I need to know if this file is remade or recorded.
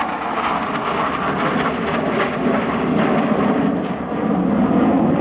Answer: recorded